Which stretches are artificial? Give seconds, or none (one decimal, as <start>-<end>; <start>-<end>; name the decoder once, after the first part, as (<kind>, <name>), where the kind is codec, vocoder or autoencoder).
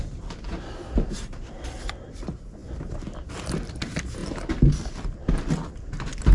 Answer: none